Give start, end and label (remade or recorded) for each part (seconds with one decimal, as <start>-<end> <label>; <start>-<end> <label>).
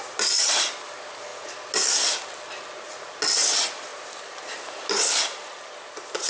0.0-6.3 recorded